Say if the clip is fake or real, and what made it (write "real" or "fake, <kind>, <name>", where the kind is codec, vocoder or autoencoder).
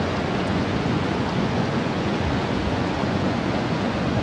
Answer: fake, vocoder, Vocos